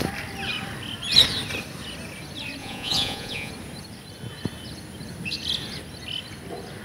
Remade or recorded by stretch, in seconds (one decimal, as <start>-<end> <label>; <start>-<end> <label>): 0.0-2.6 recorded; 2.6-3.5 remade; 3.5-6.8 recorded